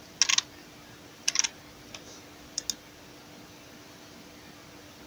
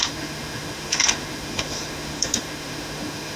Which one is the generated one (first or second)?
second